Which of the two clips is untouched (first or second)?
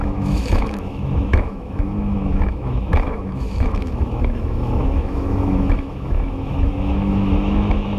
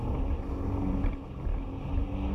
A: second